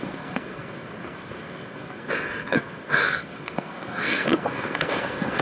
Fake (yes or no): yes